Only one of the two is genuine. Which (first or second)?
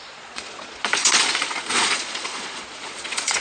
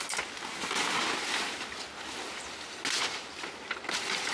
second